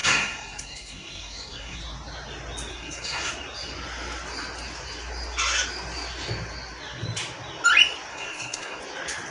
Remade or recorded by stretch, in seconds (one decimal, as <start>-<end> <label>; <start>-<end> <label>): 0.0-1.8 remade; 1.8-2.7 recorded; 2.7-3.3 remade; 3.3-8.1 recorded; 8.1-8.8 remade; 8.8-9.3 recorded